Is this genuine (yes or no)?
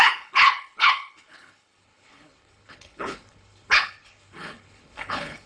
no